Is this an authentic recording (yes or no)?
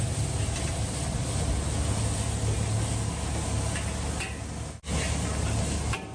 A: yes